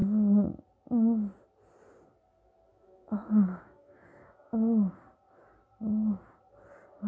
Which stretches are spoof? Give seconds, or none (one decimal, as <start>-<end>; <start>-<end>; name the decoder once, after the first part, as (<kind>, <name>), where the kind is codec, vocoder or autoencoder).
2.7-4.9 (autoencoder, DAC-VAE)